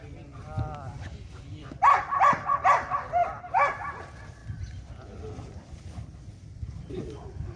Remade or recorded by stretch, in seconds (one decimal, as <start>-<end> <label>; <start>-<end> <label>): 0.0-3.2 recorded; 3.2-3.9 remade; 3.9-7.6 recorded